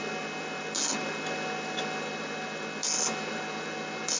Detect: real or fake real